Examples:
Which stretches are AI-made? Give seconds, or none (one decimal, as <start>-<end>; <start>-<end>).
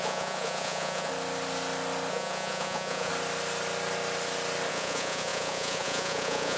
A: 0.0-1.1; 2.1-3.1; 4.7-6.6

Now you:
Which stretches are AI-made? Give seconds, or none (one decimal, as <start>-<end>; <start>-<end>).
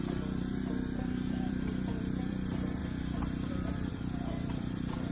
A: 0.0-5.1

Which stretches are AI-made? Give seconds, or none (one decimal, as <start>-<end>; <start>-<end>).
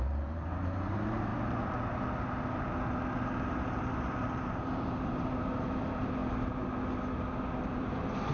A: 0.0-1.3; 4.2-6.2; 7.7-8.3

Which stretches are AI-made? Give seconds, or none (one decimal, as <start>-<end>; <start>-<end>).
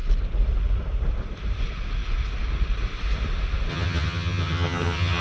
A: 3.7-5.2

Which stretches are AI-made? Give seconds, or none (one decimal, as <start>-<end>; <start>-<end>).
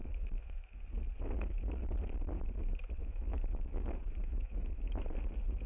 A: 0.0-0.8; 3.0-5.0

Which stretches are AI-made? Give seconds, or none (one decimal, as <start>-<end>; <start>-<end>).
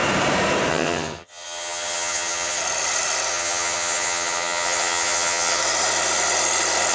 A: 0.7-2.6; 3.3-5.6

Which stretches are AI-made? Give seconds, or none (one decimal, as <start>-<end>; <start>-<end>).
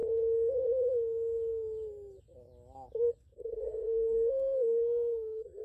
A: 3.4-5.6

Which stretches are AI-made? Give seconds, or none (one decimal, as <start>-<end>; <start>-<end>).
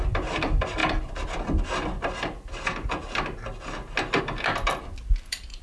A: 0.0-0.8; 4.2-5.6